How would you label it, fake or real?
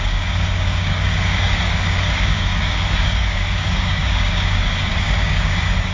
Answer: fake